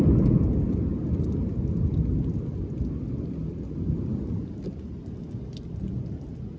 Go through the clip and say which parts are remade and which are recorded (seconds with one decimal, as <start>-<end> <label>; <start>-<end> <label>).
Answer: 0.0-6.6 recorded

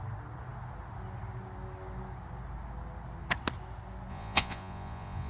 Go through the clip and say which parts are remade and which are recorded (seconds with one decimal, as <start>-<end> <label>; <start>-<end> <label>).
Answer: 0.0-4.1 recorded; 4.1-5.3 remade

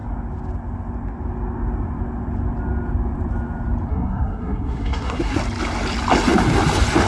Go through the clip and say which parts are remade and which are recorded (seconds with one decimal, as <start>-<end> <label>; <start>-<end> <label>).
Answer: 0.0-3.9 recorded; 3.9-5.4 remade; 5.4-7.1 recorded

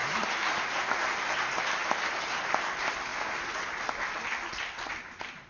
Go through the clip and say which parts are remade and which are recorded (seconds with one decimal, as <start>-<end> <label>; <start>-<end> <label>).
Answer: 0.0-0.8 remade; 0.8-5.5 recorded

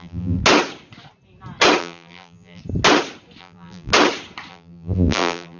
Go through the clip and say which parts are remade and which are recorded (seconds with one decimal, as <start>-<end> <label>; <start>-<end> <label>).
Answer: 0.0-0.4 remade; 0.4-1.8 recorded; 1.8-2.6 remade; 2.6-3.4 recorded; 3.4-3.9 remade; 3.9-4.5 recorded; 4.5-5.6 remade

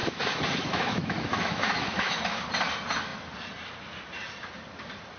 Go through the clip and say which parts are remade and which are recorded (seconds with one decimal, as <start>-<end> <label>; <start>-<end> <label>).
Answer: 0.0-2.2 remade; 2.2-5.2 recorded

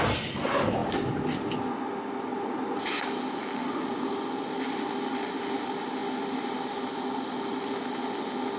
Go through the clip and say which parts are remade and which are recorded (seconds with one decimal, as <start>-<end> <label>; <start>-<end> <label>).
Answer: 0.0-8.6 recorded

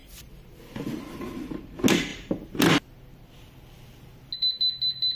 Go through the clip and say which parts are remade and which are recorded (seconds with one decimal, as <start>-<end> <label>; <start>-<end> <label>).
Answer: 0.0-1.0 remade; 1.0-2.1 recorded; 2.1-2.6 remade; 2.6-5.2 recorded